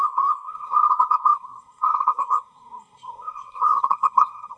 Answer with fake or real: fake